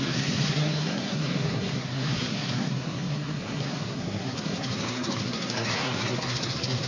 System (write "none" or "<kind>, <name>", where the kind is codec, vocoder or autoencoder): codec, SNAC